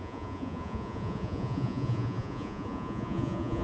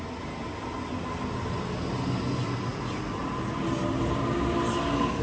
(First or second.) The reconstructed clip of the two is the first